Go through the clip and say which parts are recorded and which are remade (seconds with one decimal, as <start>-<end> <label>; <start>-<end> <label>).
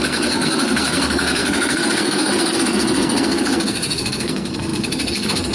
0.0-5.5 remade